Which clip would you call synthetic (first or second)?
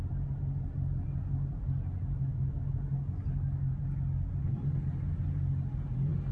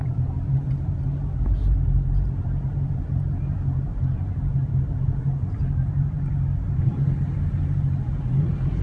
second